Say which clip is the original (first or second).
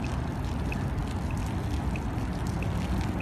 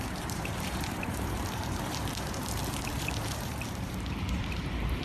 first